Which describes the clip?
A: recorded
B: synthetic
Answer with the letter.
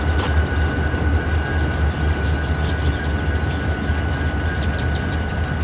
A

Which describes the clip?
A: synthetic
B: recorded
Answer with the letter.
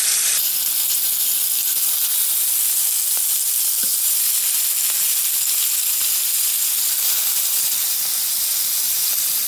B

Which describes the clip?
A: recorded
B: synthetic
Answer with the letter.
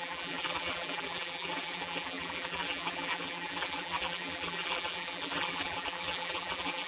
B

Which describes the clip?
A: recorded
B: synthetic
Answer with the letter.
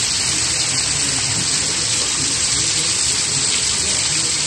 A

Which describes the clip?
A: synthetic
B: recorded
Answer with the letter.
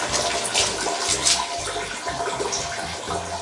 B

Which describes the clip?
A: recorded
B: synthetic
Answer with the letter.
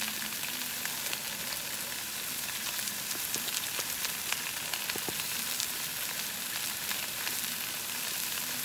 A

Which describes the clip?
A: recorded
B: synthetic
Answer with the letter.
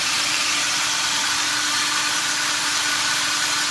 B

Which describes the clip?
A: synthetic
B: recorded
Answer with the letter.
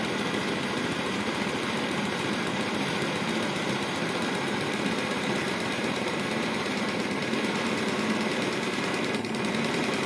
A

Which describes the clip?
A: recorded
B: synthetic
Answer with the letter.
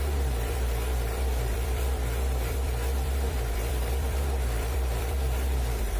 B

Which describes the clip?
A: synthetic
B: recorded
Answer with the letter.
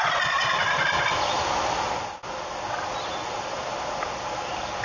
B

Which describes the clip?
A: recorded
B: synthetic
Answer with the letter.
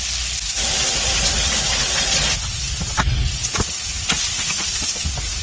A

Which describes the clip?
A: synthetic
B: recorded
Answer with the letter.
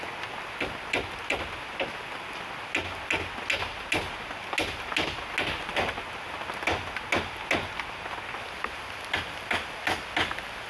B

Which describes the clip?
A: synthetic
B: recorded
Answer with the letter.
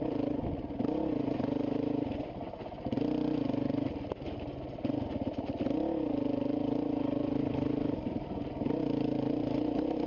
B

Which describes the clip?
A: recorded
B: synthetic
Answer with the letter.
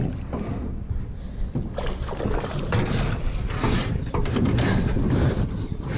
A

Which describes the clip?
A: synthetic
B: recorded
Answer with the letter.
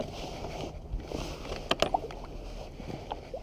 B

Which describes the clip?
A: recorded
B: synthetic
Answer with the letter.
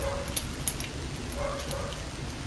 A